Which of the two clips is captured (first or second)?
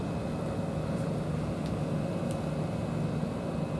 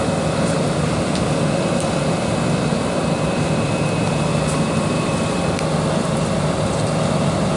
first